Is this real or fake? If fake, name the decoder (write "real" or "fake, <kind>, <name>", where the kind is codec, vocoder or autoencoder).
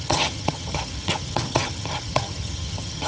fake, vocoder, HiFi-GAN